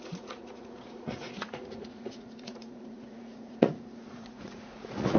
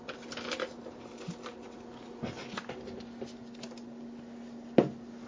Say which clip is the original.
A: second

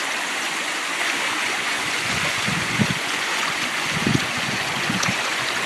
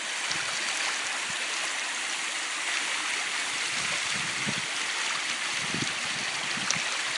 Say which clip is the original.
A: second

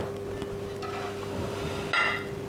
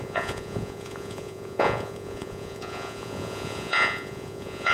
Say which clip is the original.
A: first